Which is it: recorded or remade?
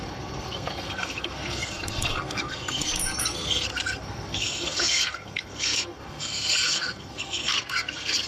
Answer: remade